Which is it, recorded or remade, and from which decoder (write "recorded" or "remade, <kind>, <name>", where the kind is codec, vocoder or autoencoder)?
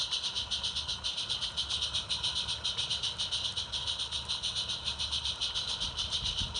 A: recorded